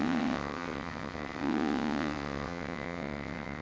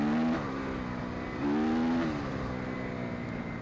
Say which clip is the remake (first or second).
first